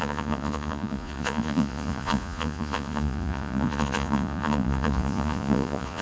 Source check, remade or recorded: remade